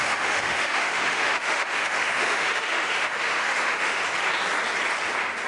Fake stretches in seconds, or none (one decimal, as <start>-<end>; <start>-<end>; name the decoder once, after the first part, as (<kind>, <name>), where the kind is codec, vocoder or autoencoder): 0.0-4.0 (autoencoder, DAC-VAE)